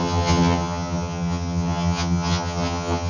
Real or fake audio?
fake